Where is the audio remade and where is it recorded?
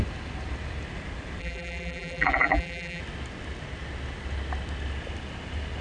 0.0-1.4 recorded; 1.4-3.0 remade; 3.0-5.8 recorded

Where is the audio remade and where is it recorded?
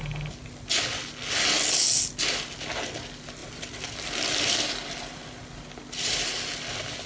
0.0-3.4 recorded; 3.4-5.4 remade; 5.4-7.1 recorded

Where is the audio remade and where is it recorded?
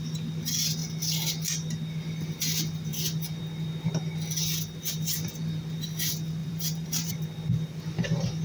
0.0-6.4 recorded; 6.4-7.1 remade; 7.1-8.4 recorded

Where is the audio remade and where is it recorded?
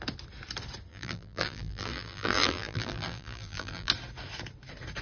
0.0-0.9 recorded; 0.9-3.9 remade; 3.9-5.0 recorded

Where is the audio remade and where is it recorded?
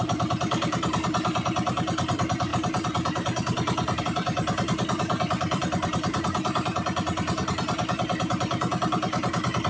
0.0-9.7 remade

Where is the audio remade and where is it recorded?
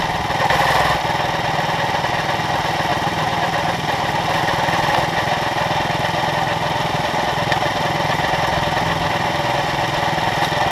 0.0-2.9 recorded; 2.9-4.4 remade; 4.4-10.7 recorded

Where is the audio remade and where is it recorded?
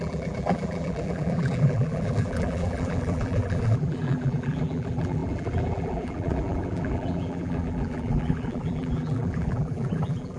0.0-10.4 remade